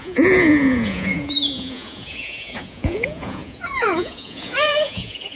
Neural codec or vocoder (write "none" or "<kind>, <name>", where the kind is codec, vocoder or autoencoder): vocoder, Vocos